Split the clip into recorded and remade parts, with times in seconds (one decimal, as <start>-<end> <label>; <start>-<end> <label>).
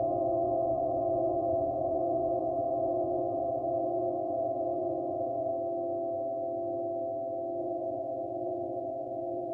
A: 0.0-5.5 remade; 5.5-7.6 recorded; 7.6-9.5 remade